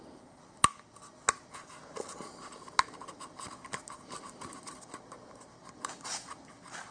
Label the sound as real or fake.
real